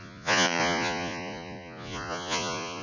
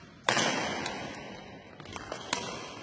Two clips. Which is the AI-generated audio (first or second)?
first